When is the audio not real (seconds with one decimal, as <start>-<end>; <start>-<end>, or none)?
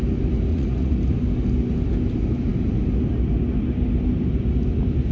0.5-1.0